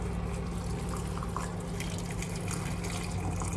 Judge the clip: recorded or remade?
recorded